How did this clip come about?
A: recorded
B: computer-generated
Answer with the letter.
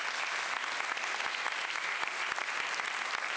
A